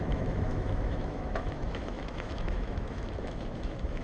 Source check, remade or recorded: remade